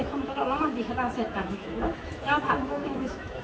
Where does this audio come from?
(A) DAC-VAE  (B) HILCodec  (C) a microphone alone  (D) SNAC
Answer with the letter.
A